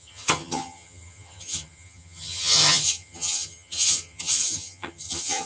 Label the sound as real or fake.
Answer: fake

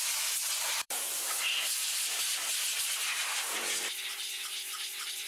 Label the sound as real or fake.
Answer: fake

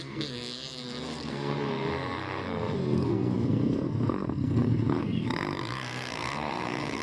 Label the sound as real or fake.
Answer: fake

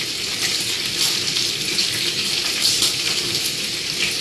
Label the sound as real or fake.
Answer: real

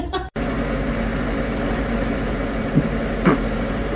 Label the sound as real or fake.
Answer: fake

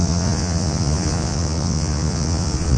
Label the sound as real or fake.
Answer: fake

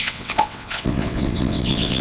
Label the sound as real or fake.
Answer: fake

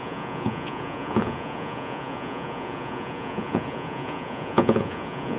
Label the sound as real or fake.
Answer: fake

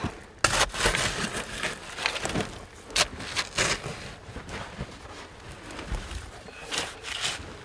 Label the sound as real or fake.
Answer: real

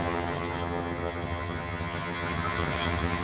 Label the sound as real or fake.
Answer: fake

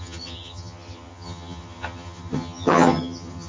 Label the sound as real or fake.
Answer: fake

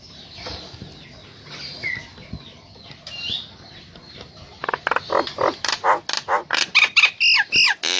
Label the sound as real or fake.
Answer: real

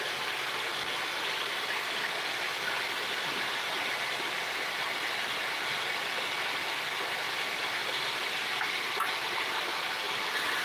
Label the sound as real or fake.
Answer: real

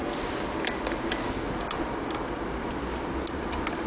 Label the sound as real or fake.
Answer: real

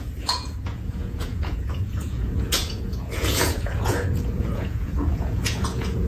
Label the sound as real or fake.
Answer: fake